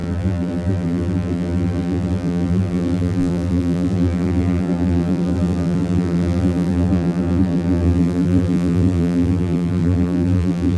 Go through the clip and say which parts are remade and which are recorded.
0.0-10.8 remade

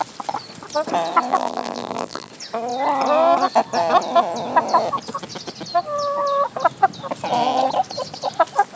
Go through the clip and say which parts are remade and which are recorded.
0.0-1.3 recorded; 1.3-2.3 remade; 2.3-8.8 recorded

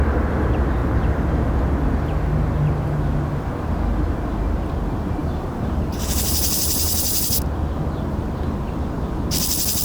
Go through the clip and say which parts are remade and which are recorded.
0.0-5.2 recorded; 5.2-7.4 remade; 7.4-9.8 recorded

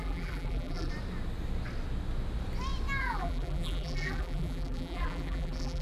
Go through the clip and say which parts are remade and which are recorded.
0.0-0.9 remade; 0.9-3.0 recorded; 3.0-5.8 remade

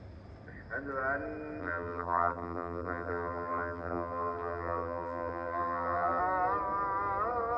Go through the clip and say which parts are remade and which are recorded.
0.0-1.6 recorded; 1.6-6.2 remade; 6.2-7.6 recorded

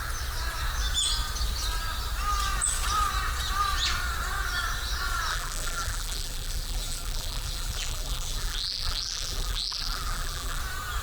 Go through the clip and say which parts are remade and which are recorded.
0.0-5.3 recorded; 5.3-10.6 remade; 10.6-11.0 recorded

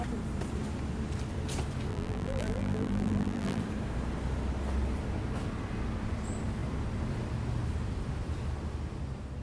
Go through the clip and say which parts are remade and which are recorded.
0.0-1.9 recorded; 1.9-3.6 remade; 3.6-9.4 recorded